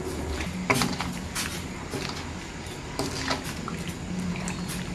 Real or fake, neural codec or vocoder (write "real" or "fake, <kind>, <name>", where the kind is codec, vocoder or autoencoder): real